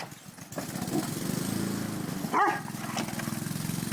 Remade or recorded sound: recorded